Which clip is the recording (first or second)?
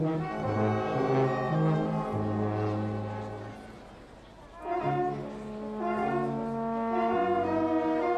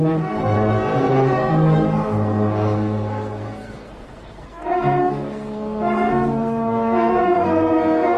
first